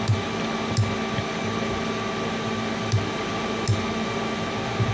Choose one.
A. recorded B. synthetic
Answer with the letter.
A